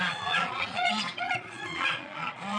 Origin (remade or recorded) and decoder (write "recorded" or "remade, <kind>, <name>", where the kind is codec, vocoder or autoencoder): remade, vocoder, Vocos